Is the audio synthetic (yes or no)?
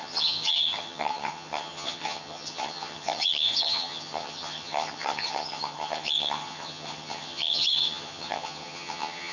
yes